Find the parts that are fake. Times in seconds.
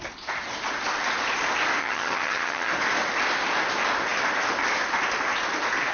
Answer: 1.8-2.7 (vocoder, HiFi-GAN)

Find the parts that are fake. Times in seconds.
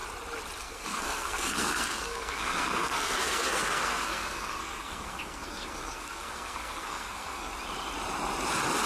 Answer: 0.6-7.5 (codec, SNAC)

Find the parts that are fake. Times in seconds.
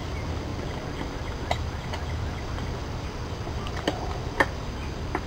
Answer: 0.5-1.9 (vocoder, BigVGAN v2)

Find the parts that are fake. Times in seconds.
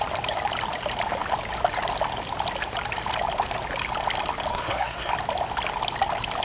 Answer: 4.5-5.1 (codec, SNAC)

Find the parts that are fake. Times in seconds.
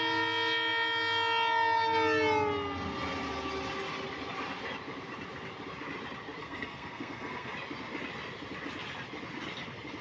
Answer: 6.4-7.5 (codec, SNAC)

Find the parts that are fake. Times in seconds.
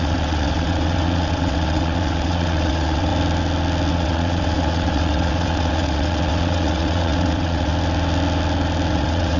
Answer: 0.0-3.1 (vocoder, WaveNeXt); 3.9-7.7; 8.9-9.4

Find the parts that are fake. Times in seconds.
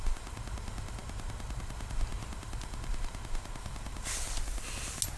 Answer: none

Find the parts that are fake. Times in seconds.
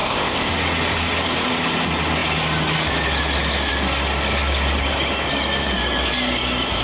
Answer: 0.0-0.5 (codec, ZipCodec)